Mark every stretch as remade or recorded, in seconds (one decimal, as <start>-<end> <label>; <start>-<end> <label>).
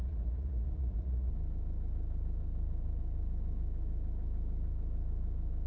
0.0-1.3 remade; 1.3-5.7 recorded